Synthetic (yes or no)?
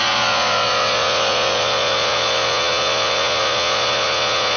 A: yes